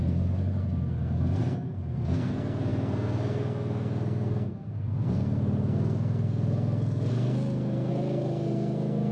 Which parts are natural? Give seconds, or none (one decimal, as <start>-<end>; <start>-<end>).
none